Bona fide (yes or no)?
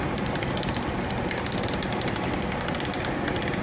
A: yes